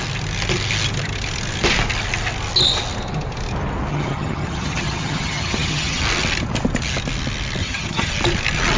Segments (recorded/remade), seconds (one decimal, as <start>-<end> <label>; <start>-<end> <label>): 0.0-3.9 recorded; 3.9-6.0 remade; 6.0-7.6 recorded; 7.6-8.1 remade; 8.1-8.8 recorded